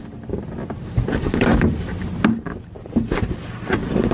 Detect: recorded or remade recorded